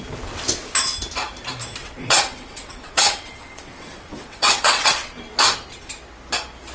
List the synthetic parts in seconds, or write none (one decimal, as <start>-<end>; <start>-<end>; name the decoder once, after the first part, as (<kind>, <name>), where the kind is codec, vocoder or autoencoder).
1.8-5.1 (vocoder, WaveNeXt)